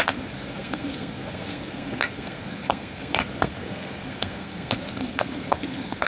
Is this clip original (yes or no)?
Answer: no